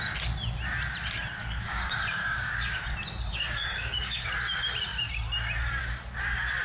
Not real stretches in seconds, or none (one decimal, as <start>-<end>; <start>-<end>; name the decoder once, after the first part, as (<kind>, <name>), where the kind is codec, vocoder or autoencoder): 1.4-2.8 (codec, DAC); 3.3-4.3